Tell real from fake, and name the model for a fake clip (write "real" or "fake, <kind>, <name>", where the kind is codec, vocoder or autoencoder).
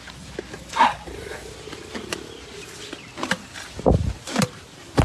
real